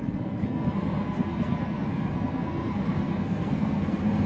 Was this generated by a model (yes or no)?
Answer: yes